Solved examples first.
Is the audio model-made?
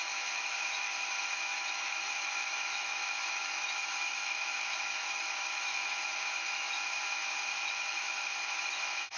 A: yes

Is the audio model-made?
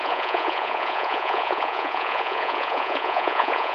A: yes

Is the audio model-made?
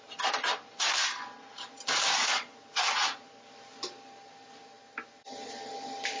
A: no